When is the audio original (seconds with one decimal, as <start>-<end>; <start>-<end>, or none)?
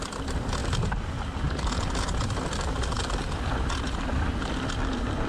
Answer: 0.0-5.3